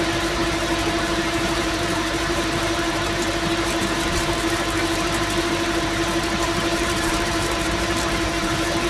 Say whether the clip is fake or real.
fake